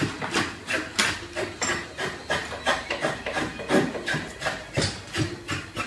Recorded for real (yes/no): yes